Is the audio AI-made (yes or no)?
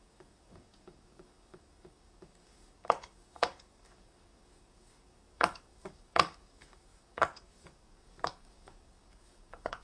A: yes